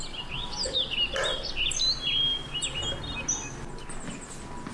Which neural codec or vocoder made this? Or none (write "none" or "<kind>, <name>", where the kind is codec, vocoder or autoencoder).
none